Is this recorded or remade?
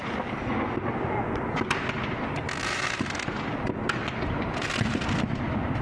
recorded